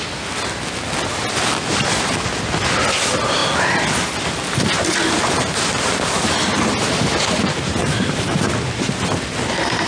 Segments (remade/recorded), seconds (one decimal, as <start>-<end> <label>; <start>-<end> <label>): 0.0-7.8 recorded; 7.8-8.4 remade; 8.4-9.9 recorded